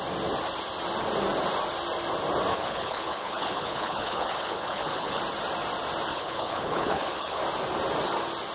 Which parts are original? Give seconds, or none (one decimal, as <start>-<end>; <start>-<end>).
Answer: 0.0-2.5; 5.2-6.1; 7.4-8.5